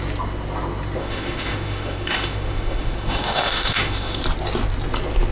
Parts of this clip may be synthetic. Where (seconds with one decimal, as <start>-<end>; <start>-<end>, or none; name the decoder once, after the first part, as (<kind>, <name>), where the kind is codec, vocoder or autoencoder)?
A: 1.0-4.2 (autoencoder, DAC-VAE)